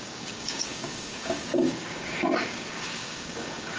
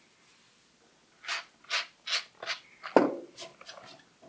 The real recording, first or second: second